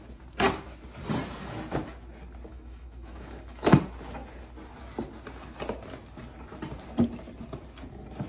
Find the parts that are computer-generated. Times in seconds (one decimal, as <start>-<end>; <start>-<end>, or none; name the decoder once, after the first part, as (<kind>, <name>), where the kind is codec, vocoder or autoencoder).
2.5-3.8 (autoencoder, DAC-VAE)